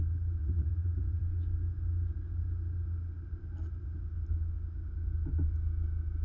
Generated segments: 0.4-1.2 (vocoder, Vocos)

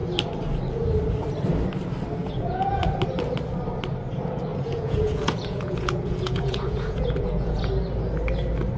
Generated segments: 2.2-2.9 (vocoder, Vocos); 4.5-7.7

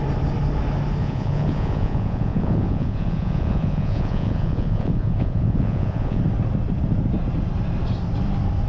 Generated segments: 1.0-6.2 (vocoder, Vocos)

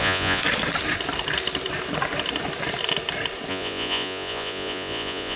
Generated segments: 0.0-0.4 (vocoder, Vocos); 3.5-5.4